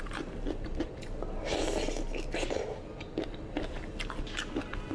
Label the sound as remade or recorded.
recorded